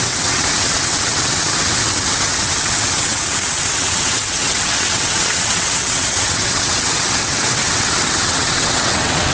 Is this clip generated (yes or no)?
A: yes